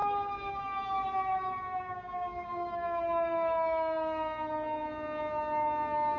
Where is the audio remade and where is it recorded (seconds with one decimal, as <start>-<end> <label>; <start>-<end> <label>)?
0.0-3.0 remade; 3.0-6.2 recorded